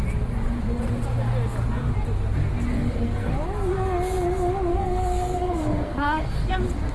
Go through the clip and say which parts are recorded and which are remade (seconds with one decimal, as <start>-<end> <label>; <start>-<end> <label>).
0.0-2.7 recorded; 2.7-3.3 remade; 3.3-4.7 recorded; 4.7-6.5 remade; 6.5-6.9 recorded